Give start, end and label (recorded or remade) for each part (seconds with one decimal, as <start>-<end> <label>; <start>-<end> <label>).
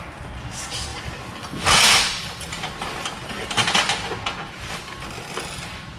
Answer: 0.0-6.0 recorded